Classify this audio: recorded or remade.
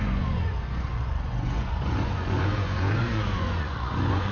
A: remade